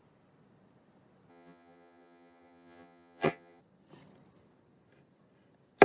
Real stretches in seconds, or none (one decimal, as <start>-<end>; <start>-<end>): 0.0-1.3; 3.6-5.8